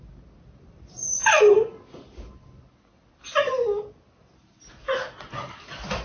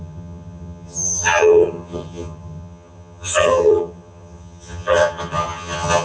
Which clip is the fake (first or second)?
second